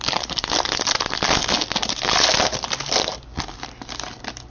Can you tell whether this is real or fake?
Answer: real